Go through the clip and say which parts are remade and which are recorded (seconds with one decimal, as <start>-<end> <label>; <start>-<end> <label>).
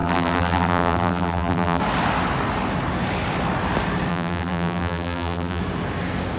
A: 0.0-1.8 remade; 1.8-4.1 recorded; 4.1-5.6 remade; 5.6-6.4 recorded